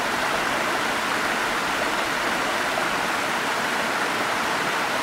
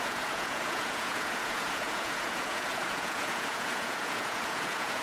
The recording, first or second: first